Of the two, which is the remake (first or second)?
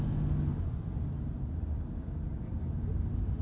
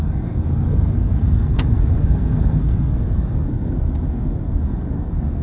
second